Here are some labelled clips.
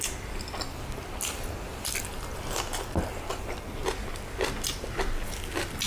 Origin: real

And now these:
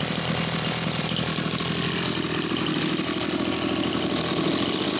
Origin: real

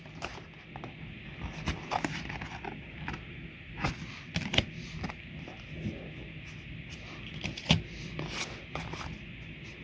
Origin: real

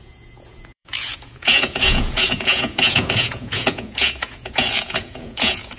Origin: fake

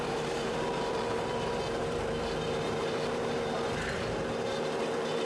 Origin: fake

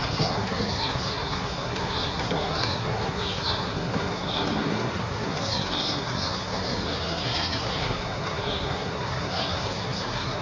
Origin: fake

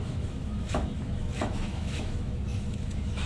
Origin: fake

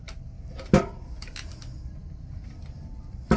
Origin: real